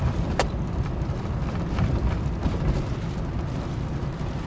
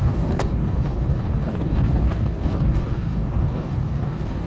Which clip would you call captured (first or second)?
first